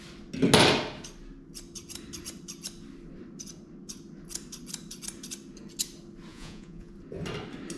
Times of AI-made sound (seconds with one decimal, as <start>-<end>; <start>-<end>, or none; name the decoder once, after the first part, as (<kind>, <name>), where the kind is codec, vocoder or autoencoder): 6.3-6.9 (vocoder, Vocos)